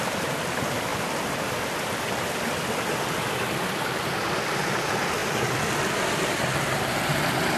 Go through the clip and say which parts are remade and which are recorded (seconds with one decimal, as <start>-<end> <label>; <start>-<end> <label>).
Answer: 0.0-7.6 recorded